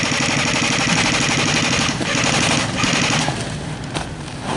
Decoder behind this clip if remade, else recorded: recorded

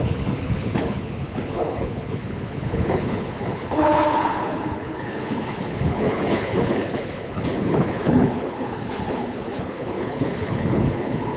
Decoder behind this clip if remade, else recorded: remade, codec, HILCodec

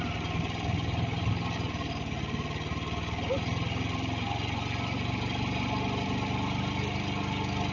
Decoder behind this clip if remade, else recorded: recorded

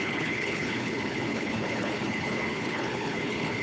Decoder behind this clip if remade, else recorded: remade, codec, HILCodec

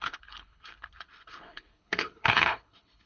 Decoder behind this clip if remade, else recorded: remade, codec, HILCodec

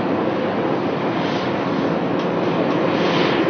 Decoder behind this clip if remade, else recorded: recorded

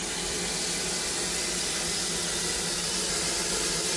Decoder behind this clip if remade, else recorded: recorded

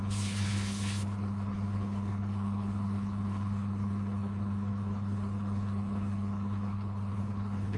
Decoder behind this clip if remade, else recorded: remade, codec, HILCodec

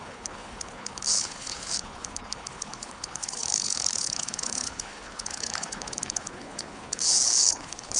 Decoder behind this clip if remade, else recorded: remade, codec, HILCodec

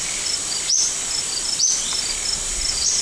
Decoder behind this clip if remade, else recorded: recorded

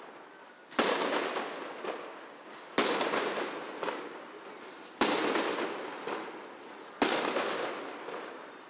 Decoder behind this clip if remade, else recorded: recorded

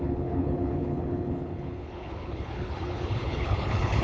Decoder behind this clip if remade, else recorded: remade, codec, HILCodec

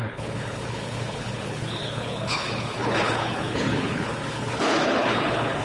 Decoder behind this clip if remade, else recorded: remade, codec, HILCodec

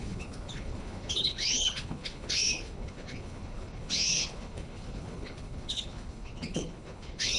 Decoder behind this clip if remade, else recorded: remade, codec, HILCodec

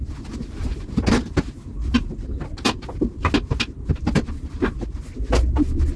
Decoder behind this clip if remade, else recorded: recorded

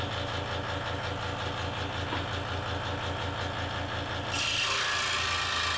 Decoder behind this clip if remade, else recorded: recorded